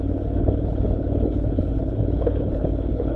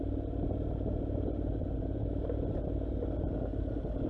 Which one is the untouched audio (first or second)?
second